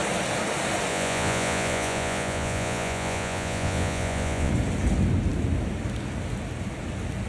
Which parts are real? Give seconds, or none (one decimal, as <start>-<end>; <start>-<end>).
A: 0.0-0.9; 4.5-7.3